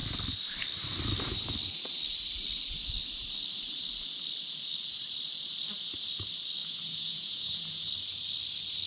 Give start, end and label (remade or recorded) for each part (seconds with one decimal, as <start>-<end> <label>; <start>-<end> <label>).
0.0-6.6 recorded; 6.6-7.9 remade; 7.9-8.9 recorded